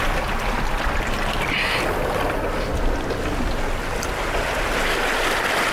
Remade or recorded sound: recorded